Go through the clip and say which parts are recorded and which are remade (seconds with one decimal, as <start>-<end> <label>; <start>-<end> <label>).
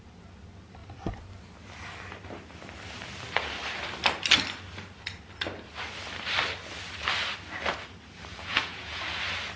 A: 0.0-8.3 recorded; 8.3-9.0 remade; 9.0-9.6 recorded